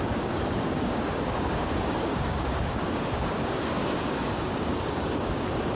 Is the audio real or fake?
fake